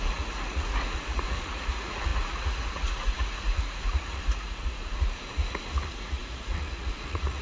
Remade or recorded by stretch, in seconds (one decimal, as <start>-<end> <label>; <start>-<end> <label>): 0.0-7.4 remade